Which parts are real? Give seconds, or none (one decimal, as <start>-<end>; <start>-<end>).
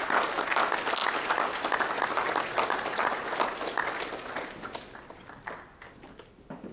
0.0-6.7